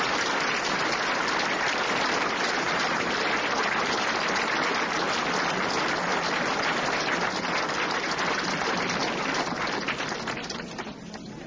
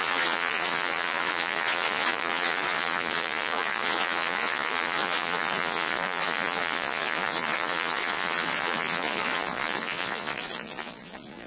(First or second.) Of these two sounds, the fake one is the second